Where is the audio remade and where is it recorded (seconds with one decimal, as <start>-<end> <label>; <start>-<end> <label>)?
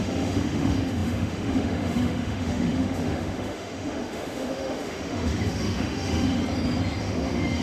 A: 0.0-6.4 remade; 6.4-7.0 recorded; 7.0-7.6 remade